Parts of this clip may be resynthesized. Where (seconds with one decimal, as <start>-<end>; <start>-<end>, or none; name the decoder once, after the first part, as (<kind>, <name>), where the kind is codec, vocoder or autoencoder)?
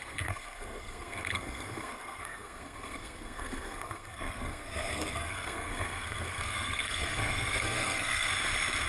0.0-8.3 (codec, SNAC)